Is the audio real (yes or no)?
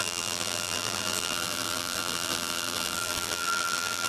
no